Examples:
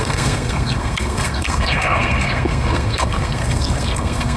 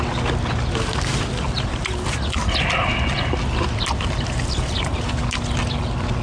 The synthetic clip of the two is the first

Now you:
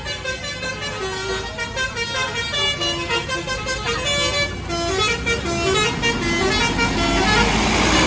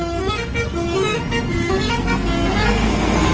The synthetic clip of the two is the second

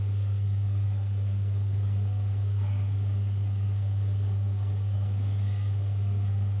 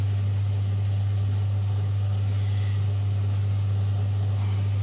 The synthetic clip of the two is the first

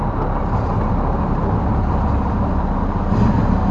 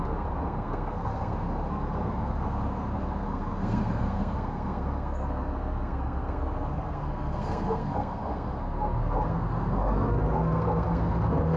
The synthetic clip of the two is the second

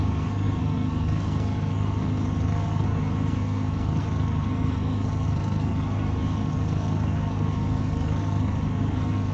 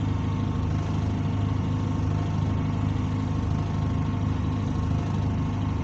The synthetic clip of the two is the first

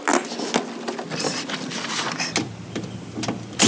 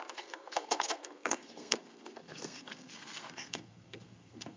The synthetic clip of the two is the second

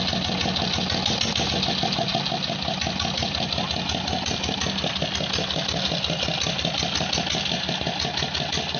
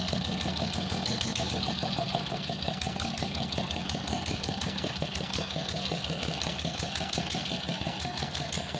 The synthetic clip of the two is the second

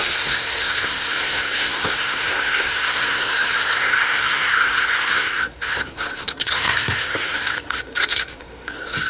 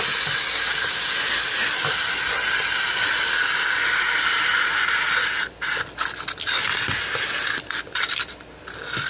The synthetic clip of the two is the first